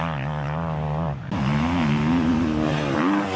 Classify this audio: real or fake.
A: real